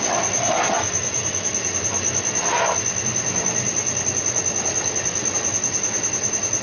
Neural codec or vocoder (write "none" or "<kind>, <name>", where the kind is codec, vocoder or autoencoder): none